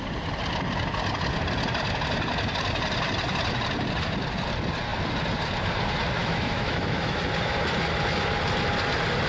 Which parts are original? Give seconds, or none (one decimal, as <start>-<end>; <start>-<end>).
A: 0.0-6.2; 7.2-9.3